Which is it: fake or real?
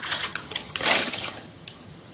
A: fake